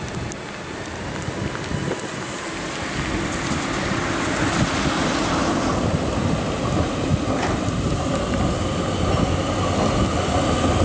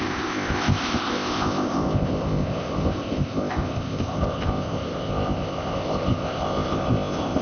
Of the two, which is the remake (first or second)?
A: second